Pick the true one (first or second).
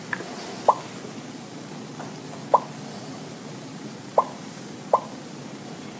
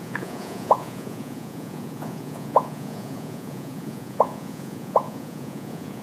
first